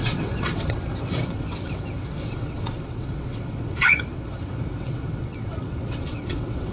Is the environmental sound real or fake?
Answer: fake